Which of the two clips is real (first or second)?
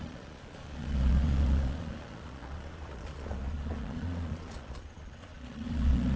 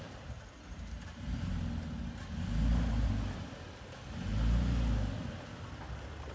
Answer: second